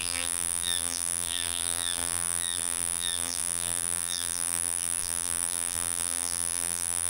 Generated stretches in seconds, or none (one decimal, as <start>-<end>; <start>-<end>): 0.0-7.1